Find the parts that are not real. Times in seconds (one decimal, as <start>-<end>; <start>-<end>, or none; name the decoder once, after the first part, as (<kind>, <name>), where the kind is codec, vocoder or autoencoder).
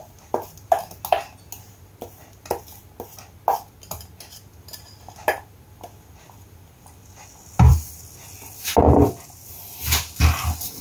none